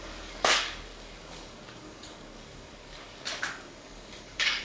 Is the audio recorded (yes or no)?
no